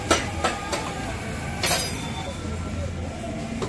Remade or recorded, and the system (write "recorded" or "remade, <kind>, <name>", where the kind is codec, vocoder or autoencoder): recorded